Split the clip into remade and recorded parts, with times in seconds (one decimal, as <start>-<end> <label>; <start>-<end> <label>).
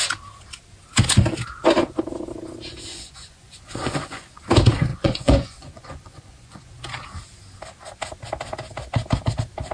0.0-2.9 recorded; 2.9-4.4 remade; 4.4-4.9 recorded; 4.9-6.7 remade; 6.7-9.7 recorded